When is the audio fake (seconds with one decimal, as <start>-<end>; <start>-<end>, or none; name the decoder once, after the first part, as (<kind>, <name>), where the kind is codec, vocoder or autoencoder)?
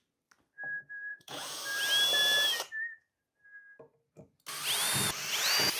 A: 1.1-1.6 (vocoder, Vocos)